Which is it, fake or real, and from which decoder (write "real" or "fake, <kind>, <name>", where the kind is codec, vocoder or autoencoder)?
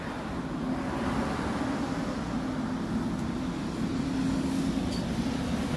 real